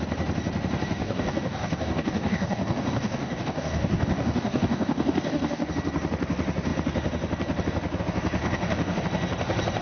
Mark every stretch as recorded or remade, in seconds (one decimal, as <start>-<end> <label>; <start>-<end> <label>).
0.0-1.0 recorded; 1.0-5.7 remade; 5.7-8.4 recorded; 8.4-9.0 remade; 9.0-9.8 recorded